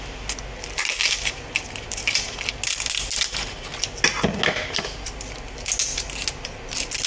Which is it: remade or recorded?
recorded